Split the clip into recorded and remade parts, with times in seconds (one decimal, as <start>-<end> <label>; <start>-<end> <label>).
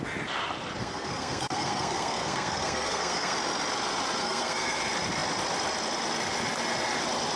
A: 0.0-0.8 recorded; 0.8-3.4 remade; 3.4-4.2 recorded; 4.2-4.8 remade; 4.8-7.4 recorded